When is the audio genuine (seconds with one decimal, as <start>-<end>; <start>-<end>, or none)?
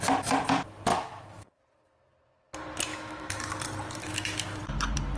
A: 0.0-0.9; 1.6-2.9; 3.5-4.0; 4.6-5.2